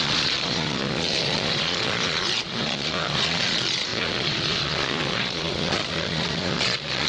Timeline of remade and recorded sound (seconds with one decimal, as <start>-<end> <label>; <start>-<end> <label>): 0.0-7.1 remade